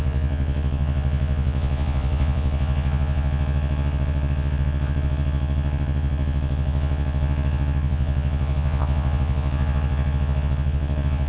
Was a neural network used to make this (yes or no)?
yes